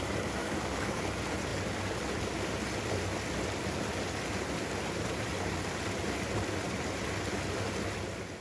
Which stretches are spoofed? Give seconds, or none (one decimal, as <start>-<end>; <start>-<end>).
0.4-1.0